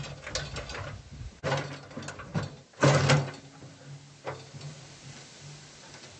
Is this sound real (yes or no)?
yes